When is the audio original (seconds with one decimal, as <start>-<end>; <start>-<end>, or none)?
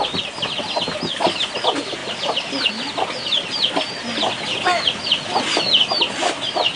0.0-2.0; 2.7-6.8